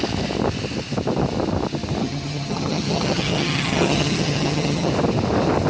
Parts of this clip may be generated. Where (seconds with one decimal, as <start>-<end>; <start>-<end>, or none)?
2.0-4.9